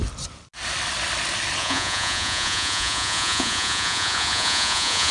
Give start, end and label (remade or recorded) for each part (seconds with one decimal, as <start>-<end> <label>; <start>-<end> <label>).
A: 0.0-1.6 recorded; 1.6-5.1 remade